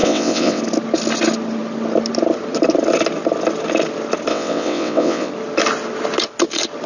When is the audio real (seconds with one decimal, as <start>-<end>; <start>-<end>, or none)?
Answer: 0.6-4.3; 5.3-6.9